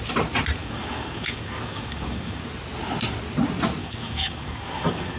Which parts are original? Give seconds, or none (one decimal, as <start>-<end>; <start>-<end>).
0.0-0.6; 2.5-3.8